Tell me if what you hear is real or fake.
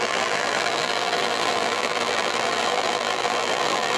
fake